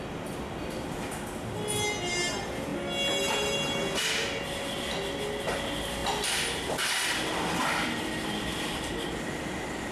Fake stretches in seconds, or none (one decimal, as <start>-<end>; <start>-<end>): none